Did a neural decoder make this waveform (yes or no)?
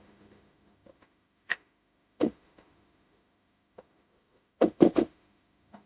yes